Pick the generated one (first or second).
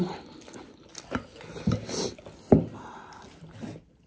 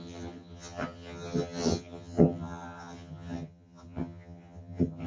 second